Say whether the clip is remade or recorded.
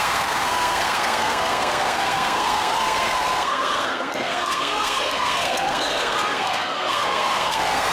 remade